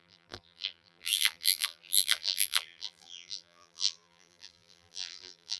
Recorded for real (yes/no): no